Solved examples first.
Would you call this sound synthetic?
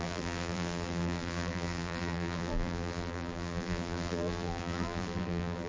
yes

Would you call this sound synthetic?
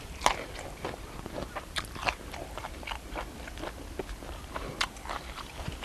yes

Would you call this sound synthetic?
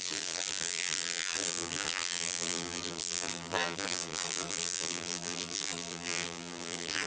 yes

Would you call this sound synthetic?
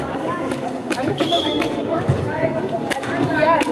yes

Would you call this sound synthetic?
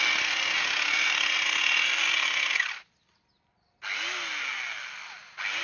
no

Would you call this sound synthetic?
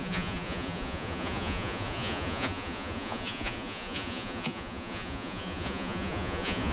yes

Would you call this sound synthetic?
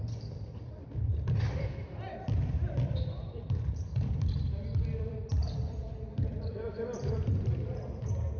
yes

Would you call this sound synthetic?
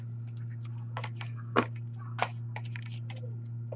no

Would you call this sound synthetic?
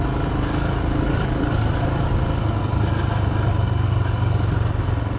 no